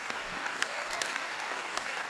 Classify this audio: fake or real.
fake